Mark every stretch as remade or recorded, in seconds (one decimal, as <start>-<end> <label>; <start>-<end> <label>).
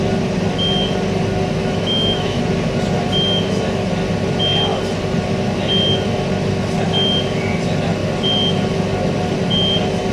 0.0-1.6 recorded; 1.6-2.4 remade; 2.4-10.1 recorded